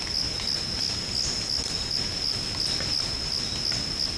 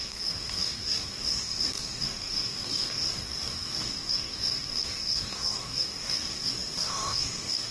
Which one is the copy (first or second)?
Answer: second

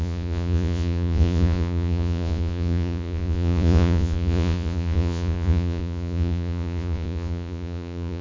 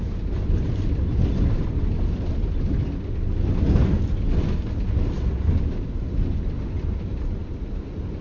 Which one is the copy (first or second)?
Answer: first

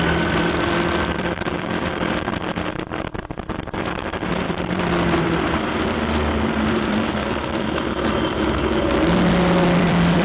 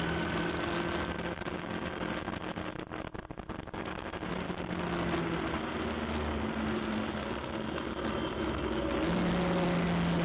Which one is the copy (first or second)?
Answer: first